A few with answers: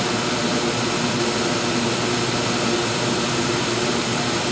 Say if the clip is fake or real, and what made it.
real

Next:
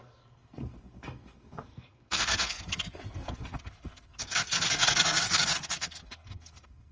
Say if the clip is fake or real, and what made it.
fake, codec, SNAC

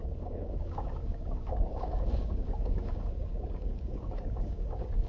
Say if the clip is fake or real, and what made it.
fake, codec, DAC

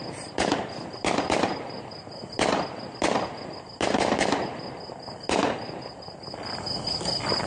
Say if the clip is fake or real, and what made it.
real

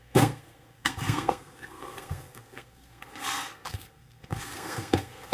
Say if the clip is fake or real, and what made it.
fake, codec, SNAC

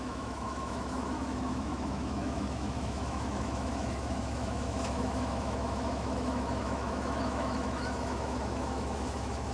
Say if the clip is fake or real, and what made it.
fake, autoencoder, DAC-VAE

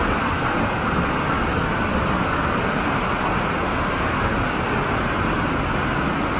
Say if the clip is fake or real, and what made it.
real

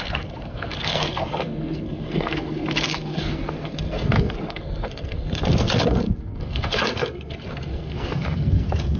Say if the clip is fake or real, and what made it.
fake, codec, SNAC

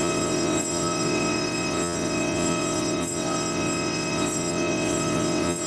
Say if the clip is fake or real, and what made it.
fake, vocoder, WaveNeXt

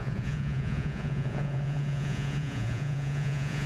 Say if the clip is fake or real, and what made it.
fake, vocoder, Vocos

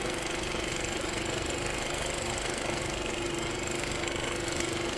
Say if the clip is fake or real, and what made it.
fake, codec, SNAC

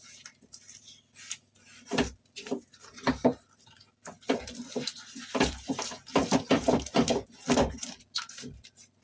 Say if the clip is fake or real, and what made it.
real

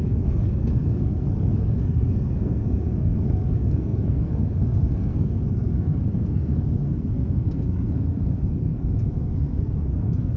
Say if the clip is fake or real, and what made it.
fake, codec, SNAC